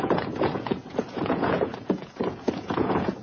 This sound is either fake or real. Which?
fake